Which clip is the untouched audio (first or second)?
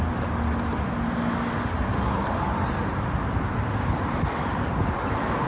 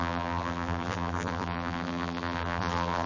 first